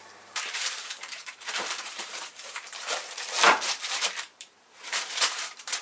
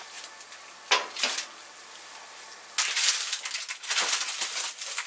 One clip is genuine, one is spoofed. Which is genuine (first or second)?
second